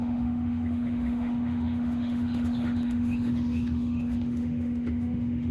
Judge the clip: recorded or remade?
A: remade